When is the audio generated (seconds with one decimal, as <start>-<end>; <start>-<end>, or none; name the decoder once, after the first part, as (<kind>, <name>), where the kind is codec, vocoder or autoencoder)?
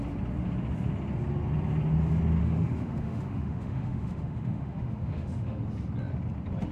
2.4-5.6 (autoencoder, DAC-VAE)